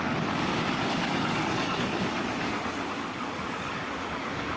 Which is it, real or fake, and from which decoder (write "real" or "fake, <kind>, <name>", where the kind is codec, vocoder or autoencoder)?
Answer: fake, codec, DAC